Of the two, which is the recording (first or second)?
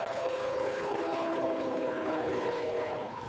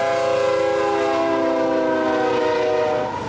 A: second